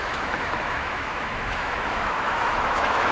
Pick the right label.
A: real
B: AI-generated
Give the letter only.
B